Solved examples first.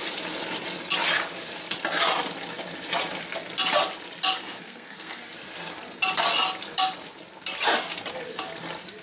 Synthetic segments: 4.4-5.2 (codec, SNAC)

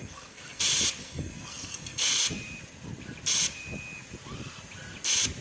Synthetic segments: 0.0-0.6 (codec, SNAC); 1.0-2.2

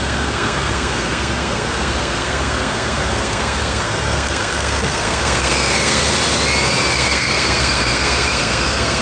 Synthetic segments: 0.0-6.0 (codec, SNAC); 6.9-9.0